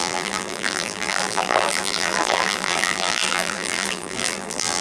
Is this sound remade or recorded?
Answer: remade